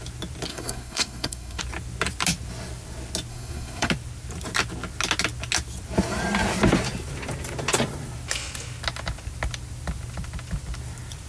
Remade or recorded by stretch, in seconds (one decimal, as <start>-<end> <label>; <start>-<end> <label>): 0.0-0.5 recorded; 0.5-1.6 remade; 1.6-3.3 recorded; 3.3-3.9 remade; 3.9-11.3 recorded